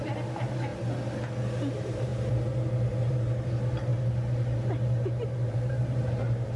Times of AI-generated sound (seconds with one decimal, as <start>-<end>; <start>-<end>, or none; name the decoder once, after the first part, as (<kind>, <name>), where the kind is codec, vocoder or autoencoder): 0.0-0.7 (vocoder, BigVGAN v2); 1.7-2.1; 3.1-3.9; 5.5-6.6